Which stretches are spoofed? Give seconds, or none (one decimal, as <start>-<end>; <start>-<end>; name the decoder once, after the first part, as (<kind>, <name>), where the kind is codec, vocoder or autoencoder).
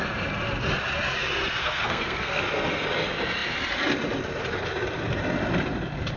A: 1.6-2.4 (codec, SNAC)